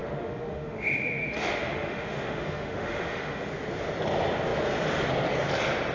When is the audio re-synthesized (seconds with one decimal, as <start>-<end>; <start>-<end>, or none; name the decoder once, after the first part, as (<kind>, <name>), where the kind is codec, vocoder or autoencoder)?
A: 0.0-3.5 (autoencoder, DAC-VAE)